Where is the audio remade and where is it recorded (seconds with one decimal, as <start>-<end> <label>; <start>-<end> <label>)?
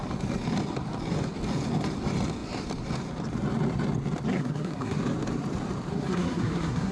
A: 0.0-4.3 recorded; 4.3-5.0 remade; 5.0-5.9 recorded; 5.9-6.9 remade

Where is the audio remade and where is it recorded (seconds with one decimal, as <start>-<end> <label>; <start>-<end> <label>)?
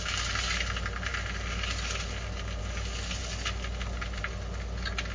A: 0.0-5.1 recorded